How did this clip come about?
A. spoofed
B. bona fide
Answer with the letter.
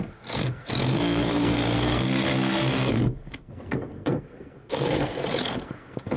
A